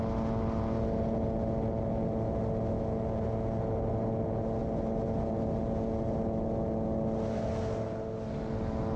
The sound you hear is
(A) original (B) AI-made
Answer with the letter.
A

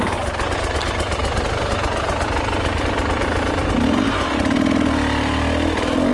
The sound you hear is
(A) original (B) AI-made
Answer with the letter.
A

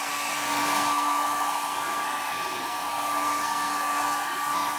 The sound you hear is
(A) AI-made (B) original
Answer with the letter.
A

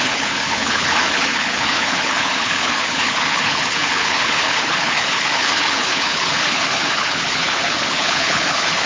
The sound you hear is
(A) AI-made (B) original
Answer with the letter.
A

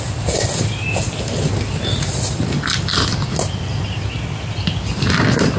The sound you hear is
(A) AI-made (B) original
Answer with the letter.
B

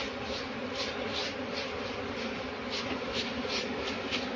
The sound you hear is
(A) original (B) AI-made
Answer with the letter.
A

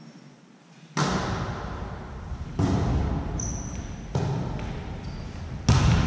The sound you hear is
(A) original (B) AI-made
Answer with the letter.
A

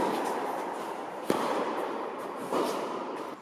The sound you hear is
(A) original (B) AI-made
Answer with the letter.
B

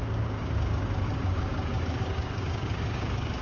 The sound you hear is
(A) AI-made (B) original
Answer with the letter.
A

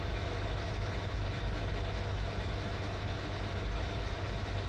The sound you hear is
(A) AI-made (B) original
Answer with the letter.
A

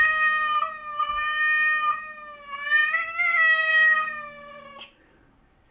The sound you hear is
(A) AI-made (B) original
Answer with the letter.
B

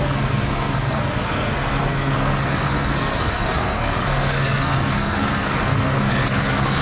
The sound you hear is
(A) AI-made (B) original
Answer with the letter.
A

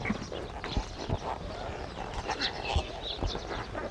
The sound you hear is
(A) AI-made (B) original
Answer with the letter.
B